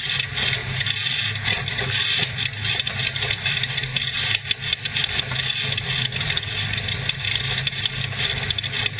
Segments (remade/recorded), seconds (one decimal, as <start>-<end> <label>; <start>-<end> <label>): 0.0-9.0 recorded